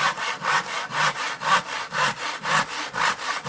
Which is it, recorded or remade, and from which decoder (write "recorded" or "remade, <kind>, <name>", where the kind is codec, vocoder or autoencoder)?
recorded